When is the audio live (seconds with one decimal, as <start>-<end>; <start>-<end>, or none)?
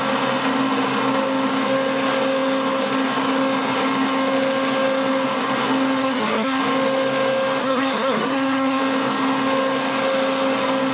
0.0-6.0; 6.6-7.6; 8.8-10.9